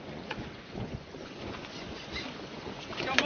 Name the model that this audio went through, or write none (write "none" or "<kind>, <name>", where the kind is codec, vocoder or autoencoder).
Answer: vocoder, Vocos